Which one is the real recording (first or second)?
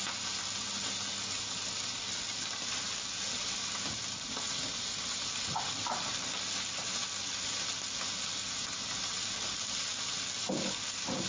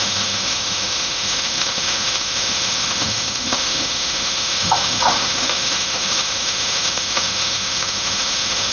first